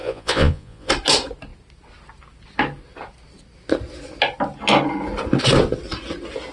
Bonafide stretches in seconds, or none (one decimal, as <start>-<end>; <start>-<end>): 0.9-6.5